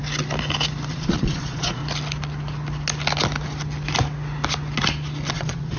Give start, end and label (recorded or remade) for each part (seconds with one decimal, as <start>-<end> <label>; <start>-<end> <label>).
0.0-0.9 recorded; 0.9-1.8 remade; 1.8-5.3 recorded; 5.3-5.8 remade